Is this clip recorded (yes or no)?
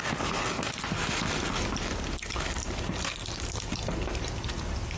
yes